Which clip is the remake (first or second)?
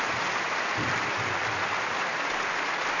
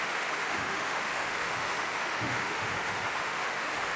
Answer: second